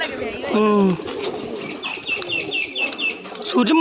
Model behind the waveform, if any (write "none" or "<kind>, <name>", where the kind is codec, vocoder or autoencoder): none